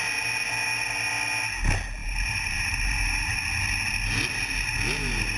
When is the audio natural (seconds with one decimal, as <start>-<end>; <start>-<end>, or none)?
0.0-2.0; 3.4-5.4